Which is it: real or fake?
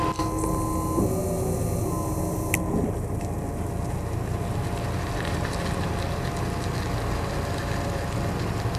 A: real